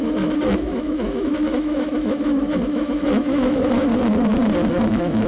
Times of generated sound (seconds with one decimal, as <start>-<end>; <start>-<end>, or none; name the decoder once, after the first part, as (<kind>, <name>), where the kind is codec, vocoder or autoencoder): 0.0-3.8 (autoencoder, DAC-VAE); 4.7-5.3